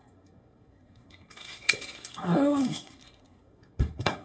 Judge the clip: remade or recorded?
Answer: remade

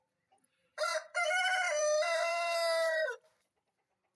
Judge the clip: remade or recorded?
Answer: remade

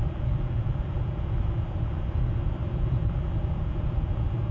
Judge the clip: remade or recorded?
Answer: remade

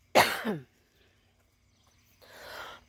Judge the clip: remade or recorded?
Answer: recorded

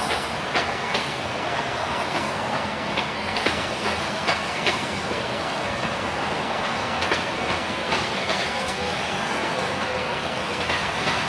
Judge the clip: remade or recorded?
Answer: remade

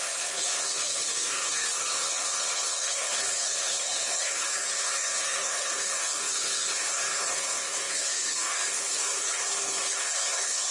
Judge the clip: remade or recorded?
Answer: remade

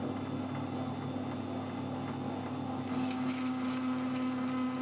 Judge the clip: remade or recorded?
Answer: recorded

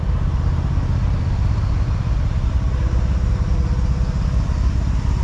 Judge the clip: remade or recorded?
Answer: recorded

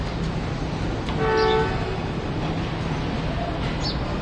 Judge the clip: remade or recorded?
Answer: recorded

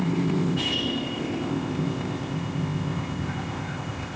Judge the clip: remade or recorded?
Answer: remade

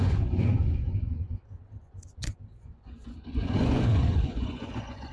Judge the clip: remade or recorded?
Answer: remade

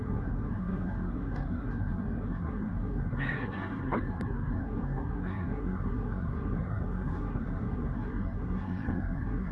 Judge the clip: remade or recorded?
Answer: remade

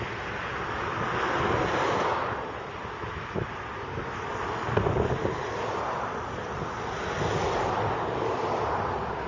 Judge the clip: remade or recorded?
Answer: recorded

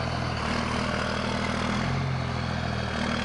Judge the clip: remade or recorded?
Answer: recorded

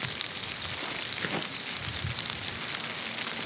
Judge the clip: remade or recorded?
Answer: recorded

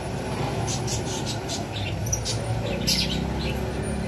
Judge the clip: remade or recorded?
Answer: recorded